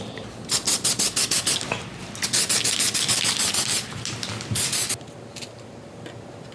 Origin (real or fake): real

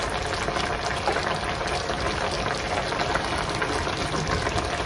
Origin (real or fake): real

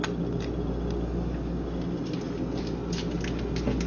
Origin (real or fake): real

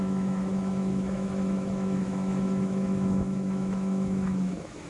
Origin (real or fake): fake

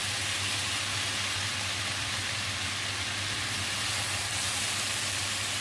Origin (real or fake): real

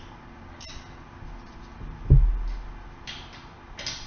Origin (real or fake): real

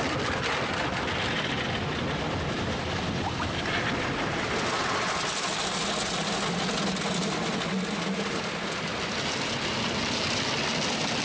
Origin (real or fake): real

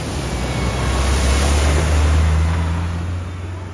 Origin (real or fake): real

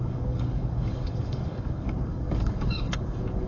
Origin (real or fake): fake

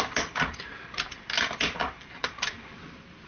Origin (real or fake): fake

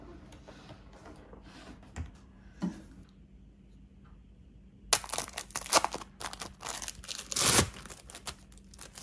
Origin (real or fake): real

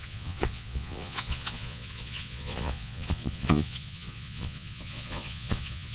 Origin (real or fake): fake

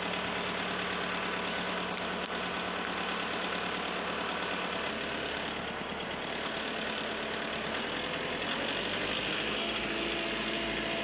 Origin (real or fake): real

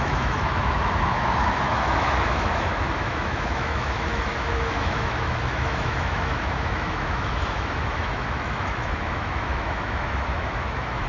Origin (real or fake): fake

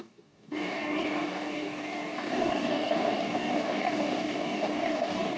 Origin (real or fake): fake